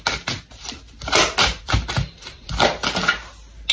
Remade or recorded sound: recorded